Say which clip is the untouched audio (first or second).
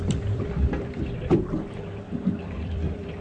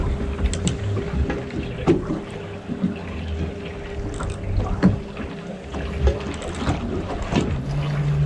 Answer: second